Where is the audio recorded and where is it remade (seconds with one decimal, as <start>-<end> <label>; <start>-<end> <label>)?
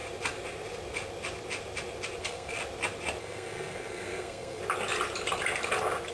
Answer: 0.0-2.2 recorded; 2.2-2.6 remade; 2.6-3.2 recorded; 3.2-4.6 remade; 4.6-6.1 recorded